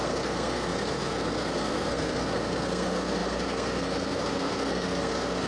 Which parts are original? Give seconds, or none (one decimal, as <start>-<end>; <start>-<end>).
none